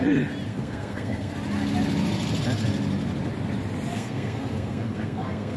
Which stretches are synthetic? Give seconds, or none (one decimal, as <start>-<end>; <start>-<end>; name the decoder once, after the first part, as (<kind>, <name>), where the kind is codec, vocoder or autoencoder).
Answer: 0.5-1.3 (codec, SNAC); 3.9-5.6